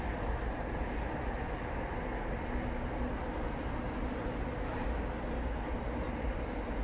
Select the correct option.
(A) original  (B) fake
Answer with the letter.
A